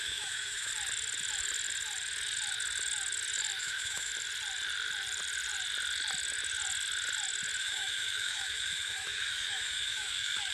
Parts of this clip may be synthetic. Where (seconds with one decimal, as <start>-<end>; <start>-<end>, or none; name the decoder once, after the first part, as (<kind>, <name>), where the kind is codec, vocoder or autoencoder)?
0.0-0.7 (autoencoder, DAC-VAE); 3.6-4.1; 7.6-10.5